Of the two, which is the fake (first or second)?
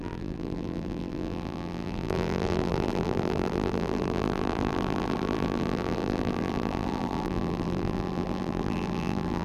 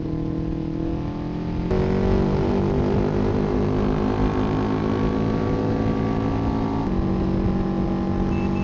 first